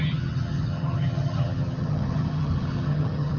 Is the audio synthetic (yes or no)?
yes